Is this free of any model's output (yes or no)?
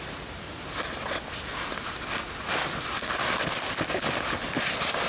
yes